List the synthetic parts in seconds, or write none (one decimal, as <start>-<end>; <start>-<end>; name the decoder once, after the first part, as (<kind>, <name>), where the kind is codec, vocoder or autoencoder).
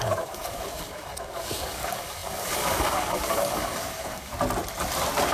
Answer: 0.0-4.3 (codec, DAC)